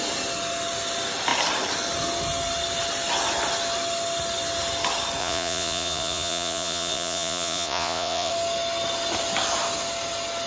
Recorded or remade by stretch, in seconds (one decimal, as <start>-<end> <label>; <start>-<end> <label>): 0.0-5.2 recorded; 5.2-8.3 remade; 8.3-10.5 recorded